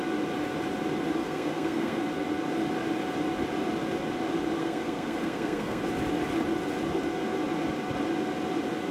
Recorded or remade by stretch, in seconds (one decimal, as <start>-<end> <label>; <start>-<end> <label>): 0.0-1.2 recorded; 1.2-2.0 remade; 2.0-4.6 recorded; 4.6-5.8 remade; 5.8-8.9 recorded